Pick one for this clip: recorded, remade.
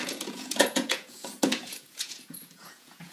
remade